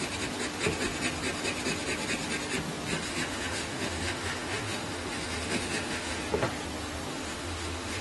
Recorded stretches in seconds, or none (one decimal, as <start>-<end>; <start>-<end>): 0.0-3.1; 6.2-7.1